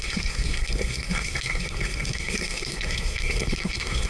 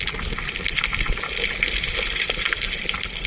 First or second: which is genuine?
second